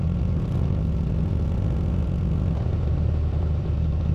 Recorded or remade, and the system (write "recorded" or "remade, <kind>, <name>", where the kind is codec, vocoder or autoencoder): recorded